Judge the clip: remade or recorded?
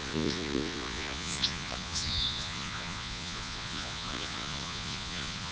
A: remade